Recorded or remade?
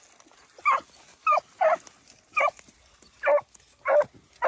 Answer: recorded